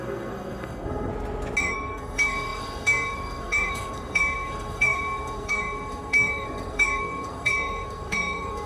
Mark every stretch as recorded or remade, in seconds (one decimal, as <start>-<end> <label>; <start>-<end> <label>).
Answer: 0.0-1.1 remade; 1.1-1.6 recorded; 1.6-8.7 remade